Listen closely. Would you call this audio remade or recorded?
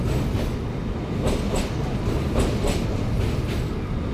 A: recorded